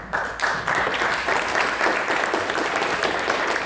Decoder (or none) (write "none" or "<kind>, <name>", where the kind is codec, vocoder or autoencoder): none